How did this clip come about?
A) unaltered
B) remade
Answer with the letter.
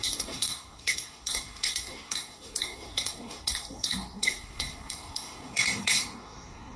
B